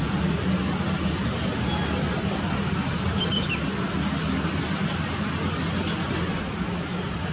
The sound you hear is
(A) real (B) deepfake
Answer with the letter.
A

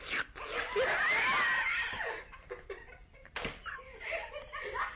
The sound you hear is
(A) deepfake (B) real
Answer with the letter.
B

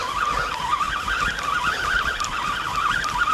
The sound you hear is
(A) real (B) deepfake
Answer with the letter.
A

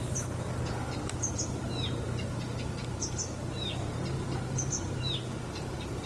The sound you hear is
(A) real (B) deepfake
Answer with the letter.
B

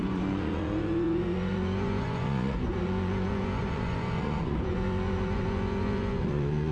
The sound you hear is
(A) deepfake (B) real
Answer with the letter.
A